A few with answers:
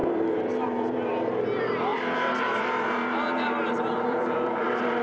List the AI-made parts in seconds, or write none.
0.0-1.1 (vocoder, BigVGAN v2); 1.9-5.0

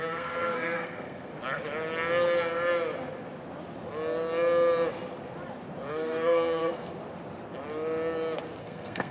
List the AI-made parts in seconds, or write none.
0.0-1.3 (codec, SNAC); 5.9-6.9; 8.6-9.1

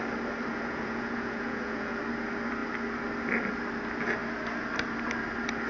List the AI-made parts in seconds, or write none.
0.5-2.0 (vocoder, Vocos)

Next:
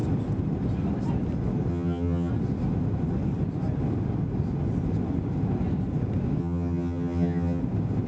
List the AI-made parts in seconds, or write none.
1.7-2.3 (vocoder, HiFi-GAN); 6.4-7.6

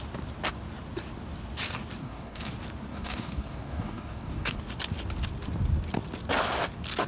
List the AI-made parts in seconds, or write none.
2.0-2.5 (codec, DAC); 2.9-4.6

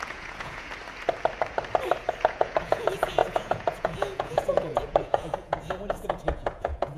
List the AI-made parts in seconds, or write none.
0.0-0.7 (vocoder, Vocos); 2.2-7.0